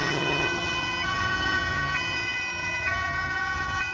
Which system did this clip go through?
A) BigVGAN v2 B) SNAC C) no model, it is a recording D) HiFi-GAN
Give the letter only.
D